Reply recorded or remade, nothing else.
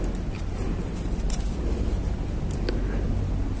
recorded